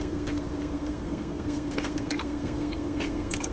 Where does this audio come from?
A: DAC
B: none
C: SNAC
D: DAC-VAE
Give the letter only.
C